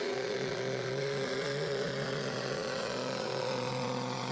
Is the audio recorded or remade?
remade